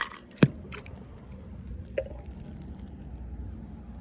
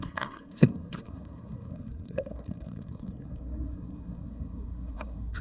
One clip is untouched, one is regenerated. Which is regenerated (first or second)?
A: second